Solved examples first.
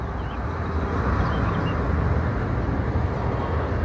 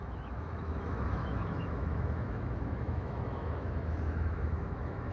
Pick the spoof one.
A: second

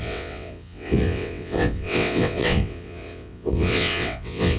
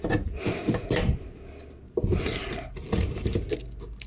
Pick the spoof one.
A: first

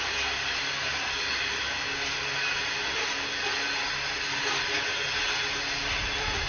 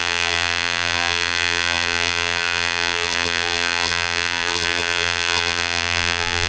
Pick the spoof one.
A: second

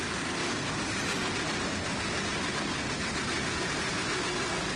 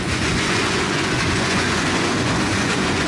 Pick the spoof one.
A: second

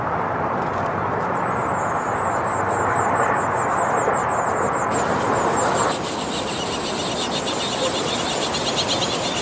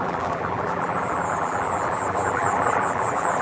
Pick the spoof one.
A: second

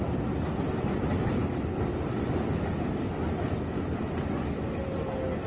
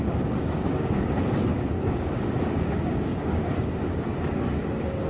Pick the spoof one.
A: second